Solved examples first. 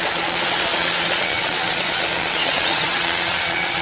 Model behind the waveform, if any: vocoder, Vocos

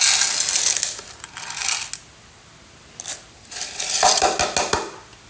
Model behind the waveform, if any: none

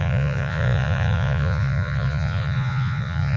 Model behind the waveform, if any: vocoder, Vocos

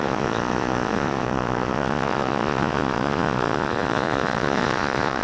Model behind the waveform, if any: vocoder, Vocos